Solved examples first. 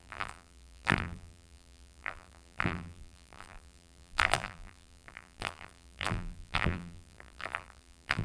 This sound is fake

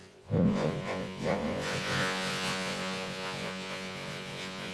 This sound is fake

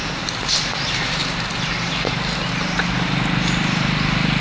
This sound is real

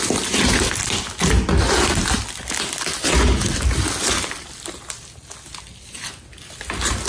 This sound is real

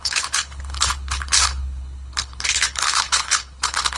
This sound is fake